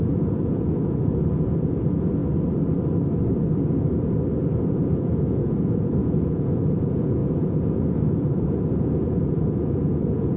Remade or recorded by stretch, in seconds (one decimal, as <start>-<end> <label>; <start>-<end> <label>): 0.0-2.2 remade; 2.2-4.5 recorded; 4.5-10.4 remade

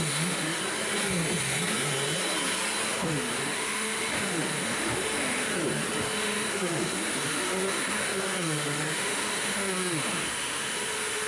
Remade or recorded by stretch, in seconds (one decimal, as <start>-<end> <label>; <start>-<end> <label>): 0.0-0.6 remade; 0.6-2.9 recorded; 2.9-5.5 remade; 5.5-6.0 recorded; 6.0-11.3 remade